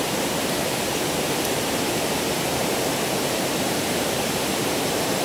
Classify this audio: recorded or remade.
remade